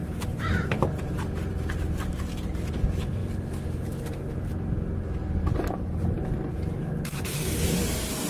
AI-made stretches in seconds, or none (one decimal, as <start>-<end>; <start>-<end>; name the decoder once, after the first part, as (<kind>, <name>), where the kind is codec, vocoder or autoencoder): 0.0-4.5 (vocoder, BigVGAN v2); 5.7-8.3